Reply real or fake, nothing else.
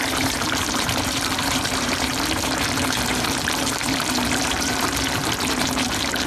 fake